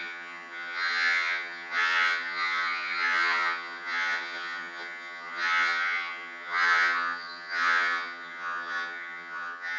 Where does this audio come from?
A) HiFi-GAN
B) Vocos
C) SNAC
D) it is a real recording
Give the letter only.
A